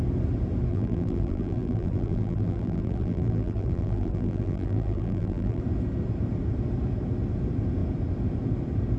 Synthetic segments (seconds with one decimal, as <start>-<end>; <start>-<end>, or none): 0.7-5.6